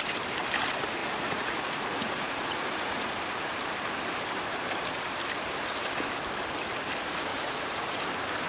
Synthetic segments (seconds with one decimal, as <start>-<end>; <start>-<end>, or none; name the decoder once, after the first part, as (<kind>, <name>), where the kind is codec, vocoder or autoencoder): 1.0-3.1 (vocoder, Vocos); 7.3-8.0